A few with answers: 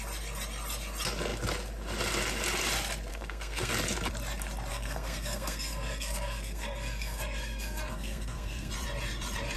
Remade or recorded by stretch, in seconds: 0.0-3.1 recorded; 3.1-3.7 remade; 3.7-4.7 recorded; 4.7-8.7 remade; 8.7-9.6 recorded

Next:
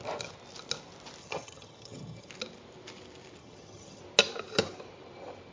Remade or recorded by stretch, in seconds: 0.0-1.2 recorded; 1.2-2.3 remade; 2.3-3.4 recorded; 3.4-4.0 remade; 4.0-5.5 recorded

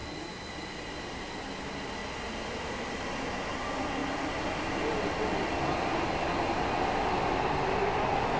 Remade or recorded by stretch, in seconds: 0.0-0.5 remade; 0.5-8.4 recorded

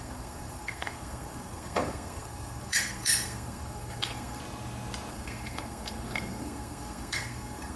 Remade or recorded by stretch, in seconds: 0.0-4.4 remade; 4.4-5.1 recorded; 5.1-7.8 remade

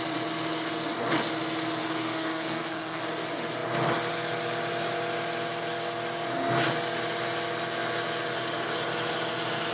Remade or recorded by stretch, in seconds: 0.0-1.8 recorded; 1.8-3.0 remade; 3.0-9.7 recorded